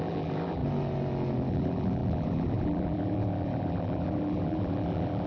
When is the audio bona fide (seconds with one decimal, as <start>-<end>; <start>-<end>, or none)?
0.6-1.5